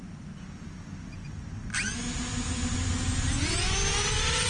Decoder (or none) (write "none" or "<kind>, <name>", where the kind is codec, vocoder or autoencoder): none